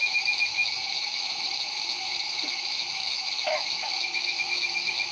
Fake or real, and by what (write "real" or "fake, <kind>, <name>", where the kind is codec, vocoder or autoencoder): fake, autoencoder, DAC-VAE